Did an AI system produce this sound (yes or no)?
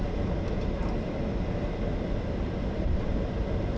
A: no